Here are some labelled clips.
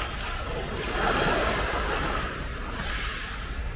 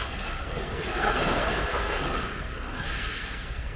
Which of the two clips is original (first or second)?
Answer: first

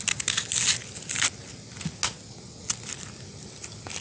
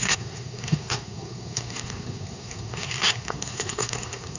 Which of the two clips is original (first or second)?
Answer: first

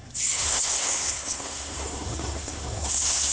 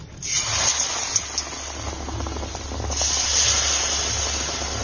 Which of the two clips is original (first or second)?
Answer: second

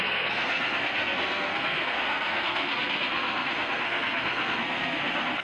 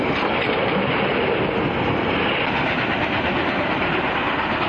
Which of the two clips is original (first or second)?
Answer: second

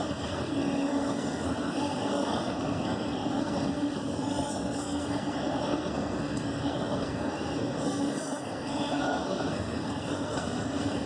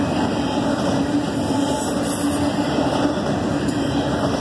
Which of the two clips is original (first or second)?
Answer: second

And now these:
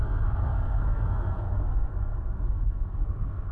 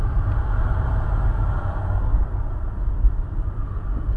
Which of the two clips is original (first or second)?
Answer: second